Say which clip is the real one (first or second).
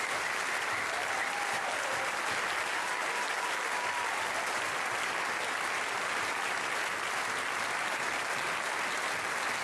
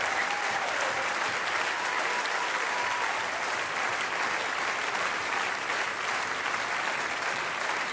first